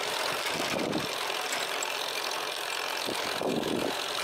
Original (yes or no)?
yes